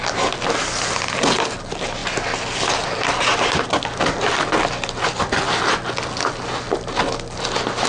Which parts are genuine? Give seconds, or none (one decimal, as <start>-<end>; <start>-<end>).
0.0-7.9